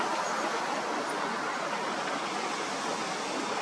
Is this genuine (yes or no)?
yes